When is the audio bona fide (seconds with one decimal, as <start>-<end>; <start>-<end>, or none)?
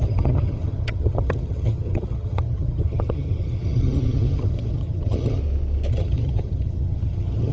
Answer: 5.4-5.9